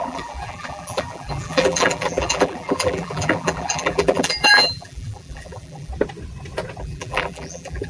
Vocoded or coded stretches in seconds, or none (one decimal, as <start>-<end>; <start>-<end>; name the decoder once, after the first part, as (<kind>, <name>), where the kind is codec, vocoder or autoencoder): 0.0-5.9 (vocoder, BigVGAN v2); 6.8-7.9